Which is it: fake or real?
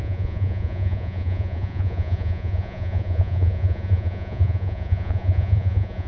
fake